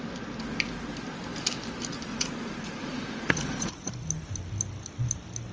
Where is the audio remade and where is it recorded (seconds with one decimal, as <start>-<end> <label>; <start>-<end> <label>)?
0.0-2.1 recorded; 2.1-3.9 remade; 3.9-5.5 recorded

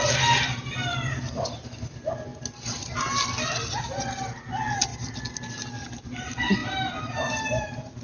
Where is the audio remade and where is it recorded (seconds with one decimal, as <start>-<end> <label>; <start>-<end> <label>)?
0.0-8.0 recorded

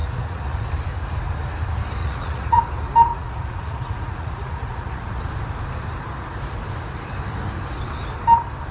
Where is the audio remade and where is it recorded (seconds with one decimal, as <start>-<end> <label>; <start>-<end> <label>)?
0.0-0.7 remade; 0.7-2.0 recorded; 2.0-2.6 remade; 2.6-3.1 recorded; 3.1-5.2 remade; 5.2-8.7 recorded

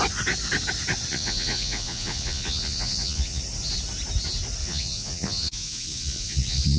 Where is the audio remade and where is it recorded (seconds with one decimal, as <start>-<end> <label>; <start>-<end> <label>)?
0.0-1.1 recorded; 1.1-3.4 remade; 3.4-4.6 recorded; 4.6-6.8 remade

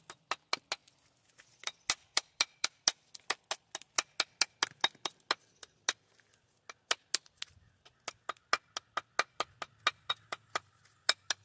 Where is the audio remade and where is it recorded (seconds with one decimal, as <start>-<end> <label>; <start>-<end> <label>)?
0.0-11.4 recorded